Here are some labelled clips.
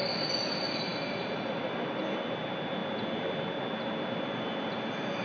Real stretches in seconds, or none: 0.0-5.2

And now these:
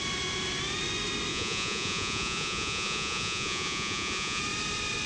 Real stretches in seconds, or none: 0.0-1.3; 4.4-5.1

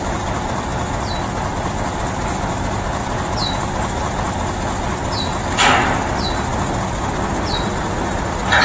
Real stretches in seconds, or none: 0.0-8.6

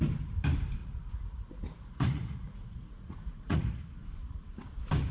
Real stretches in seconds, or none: 0.0-0.8; 3.8-5.1

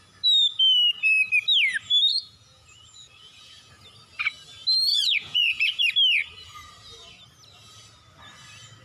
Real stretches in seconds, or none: 0.0-2.1; 3.7-4.9; 5.8-8.8

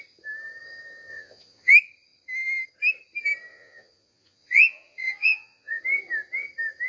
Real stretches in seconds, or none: 0.0-1.1; 1.7-3.5; 5.8-6.9

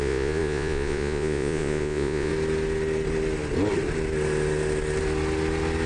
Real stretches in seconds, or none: 2.3-5.9